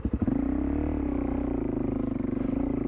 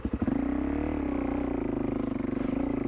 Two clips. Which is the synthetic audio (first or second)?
first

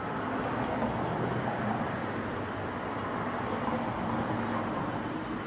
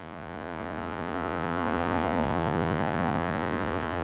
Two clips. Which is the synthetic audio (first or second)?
second